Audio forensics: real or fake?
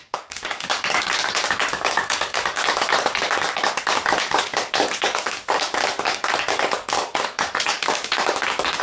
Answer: fake